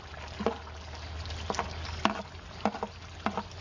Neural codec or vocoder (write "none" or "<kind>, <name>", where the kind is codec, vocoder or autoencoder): none